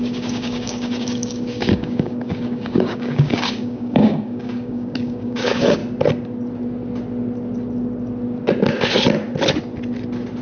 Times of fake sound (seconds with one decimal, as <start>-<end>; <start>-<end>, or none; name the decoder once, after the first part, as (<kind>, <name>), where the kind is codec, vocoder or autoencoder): 0.0-5.8 (codec, DAC)